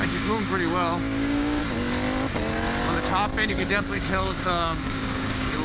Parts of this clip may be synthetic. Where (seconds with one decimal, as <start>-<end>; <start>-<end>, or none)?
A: 0.0-1.6; 3.5-5.6